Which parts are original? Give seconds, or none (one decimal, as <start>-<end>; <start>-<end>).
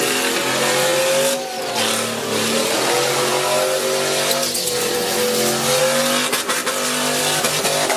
0.0-8.0